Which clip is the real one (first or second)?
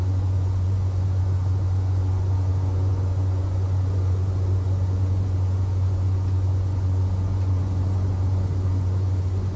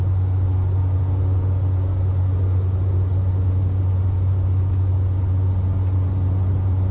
second